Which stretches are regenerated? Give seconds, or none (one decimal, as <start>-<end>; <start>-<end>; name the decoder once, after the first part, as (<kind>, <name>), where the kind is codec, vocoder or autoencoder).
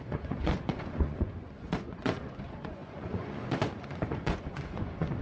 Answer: 0.0-5.2 (vocoder, Vocos)